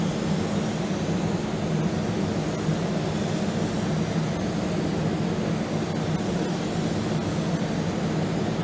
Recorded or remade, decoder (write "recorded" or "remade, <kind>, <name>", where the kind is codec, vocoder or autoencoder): recorded